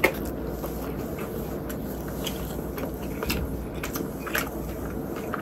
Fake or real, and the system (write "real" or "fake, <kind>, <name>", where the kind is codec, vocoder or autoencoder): real